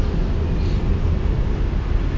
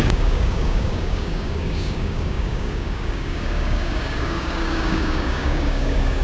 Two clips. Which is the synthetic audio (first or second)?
second